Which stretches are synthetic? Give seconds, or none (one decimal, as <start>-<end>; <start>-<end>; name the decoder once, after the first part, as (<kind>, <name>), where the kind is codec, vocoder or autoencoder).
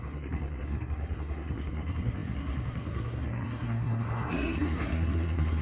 0.0-5.6 (codec, SNAC)